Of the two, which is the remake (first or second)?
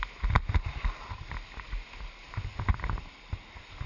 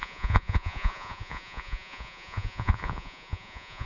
second